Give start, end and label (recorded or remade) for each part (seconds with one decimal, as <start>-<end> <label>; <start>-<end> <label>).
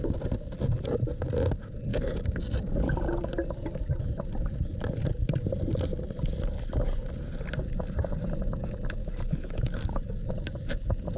0.0-9.0 recorded; 9.0-10.3 remade; 10.3-11.2 recorded